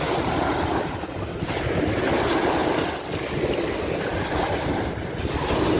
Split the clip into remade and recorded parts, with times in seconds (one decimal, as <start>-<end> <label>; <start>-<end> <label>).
0.0-2.6 remade; 2.6-4.4 recorded; 4.4-5.8 remade

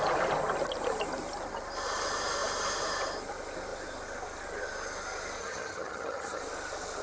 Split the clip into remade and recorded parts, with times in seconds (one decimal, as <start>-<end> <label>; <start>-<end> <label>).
0.0-5.4 recorded; 5.4-6.4 remade; 6.4-7.0 recorded

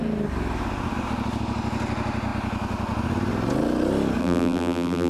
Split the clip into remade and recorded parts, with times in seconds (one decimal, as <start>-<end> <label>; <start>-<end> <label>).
0.0-4.2 recorded; 4.2-5.1 remade

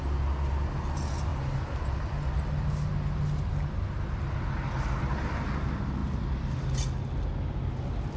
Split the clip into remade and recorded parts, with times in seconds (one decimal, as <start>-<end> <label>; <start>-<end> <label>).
0.0-8.2 recorded

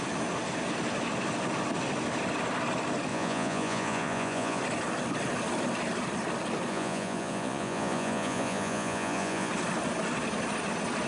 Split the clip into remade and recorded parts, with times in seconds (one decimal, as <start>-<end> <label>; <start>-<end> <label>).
0.0-3.1 recorded; 3.1-4.6 remade; 4.6-6.7 recorded; 6.7-9.5 remade; 9.5-11.1 recorded

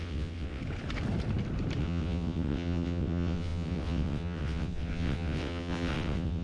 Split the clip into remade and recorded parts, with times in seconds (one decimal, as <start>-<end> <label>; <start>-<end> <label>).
0.0-0.6 remade; 0.6-1.8 recorded; 1.8-6.4 remade

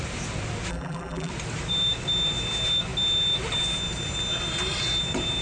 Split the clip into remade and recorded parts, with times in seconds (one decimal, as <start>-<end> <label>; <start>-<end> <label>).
0.0-0.7 recorded; 0.7-1.3 remade; 1.3-5.4 recorded